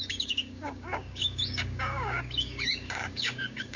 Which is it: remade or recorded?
remade